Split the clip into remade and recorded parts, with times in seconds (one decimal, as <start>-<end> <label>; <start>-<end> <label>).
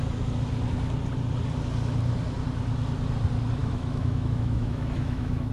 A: 0.0-3.6 recorded; 3.6-5.5 remade